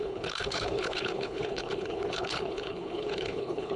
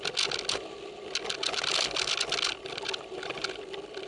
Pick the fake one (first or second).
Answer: first